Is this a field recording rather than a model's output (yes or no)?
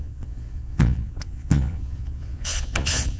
no